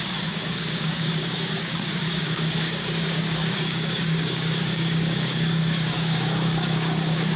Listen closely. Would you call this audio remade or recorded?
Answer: remade